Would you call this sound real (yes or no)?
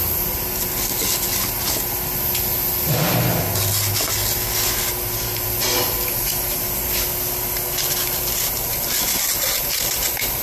yes